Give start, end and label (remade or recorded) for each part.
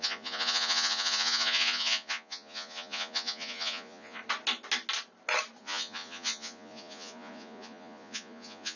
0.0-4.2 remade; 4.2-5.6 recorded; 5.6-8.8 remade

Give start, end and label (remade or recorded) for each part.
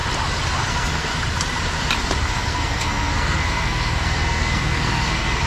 0.0-0.7 recorded; 0.7-1.1 remade; 1.1-2.3 recorded; 2.3-5.5 remade